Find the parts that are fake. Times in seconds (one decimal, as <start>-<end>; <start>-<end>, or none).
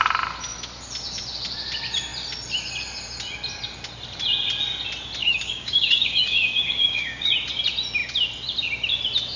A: 5.2-7.3